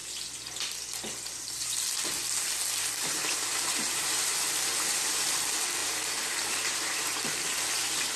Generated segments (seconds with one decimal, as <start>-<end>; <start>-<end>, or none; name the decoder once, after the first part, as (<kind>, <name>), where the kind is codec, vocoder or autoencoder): 3.5-4.3 (vocoder, BigVGAN v2); 5.8-7.7